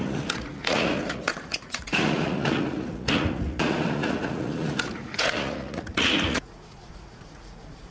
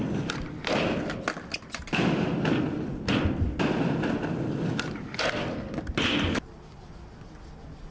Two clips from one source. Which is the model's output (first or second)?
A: first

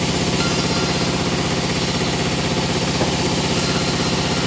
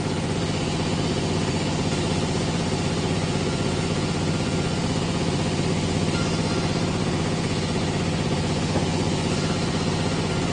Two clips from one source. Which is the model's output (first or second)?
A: second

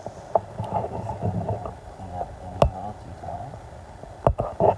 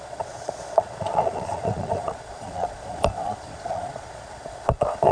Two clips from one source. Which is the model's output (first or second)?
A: second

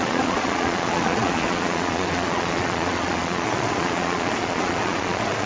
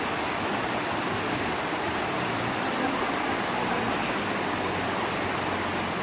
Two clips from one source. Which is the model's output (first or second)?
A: first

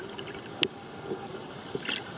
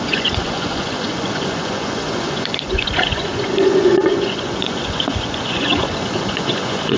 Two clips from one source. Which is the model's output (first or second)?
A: second